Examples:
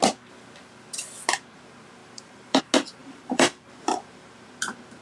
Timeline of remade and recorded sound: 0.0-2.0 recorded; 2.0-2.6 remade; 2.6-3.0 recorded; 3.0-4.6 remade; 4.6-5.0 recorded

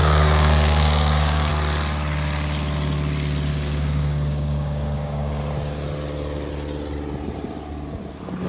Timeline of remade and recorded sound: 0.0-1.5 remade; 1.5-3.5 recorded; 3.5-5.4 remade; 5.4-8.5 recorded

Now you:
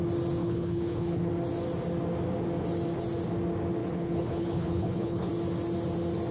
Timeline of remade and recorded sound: 0.0-0.4 recorded; 0.4-1.3 remade; 1.3-3.8 recorded; 3.8-5.3 remade; 5.3-6.3 recorded

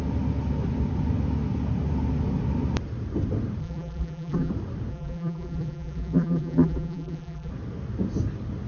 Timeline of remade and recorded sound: 0.0-3.6 recorded; 3.6-4.5 remade; 4.5-4.9 recorded; 4.9-7.5 remade; 7.5-8.7 recorded